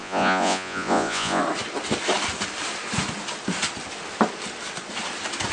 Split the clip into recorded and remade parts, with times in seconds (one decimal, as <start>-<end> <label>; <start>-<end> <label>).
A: 0.0-1.4 remade; 1.4-5.5 recorded